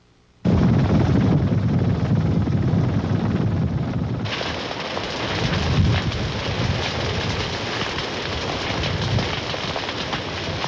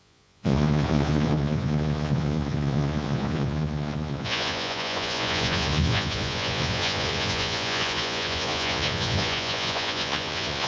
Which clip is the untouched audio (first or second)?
first